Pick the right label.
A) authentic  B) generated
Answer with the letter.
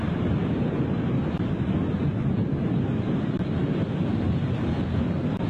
A